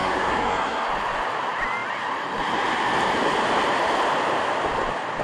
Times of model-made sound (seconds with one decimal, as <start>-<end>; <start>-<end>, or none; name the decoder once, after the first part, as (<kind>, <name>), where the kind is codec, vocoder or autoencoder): 0.0-0.9 (codec, SNAC)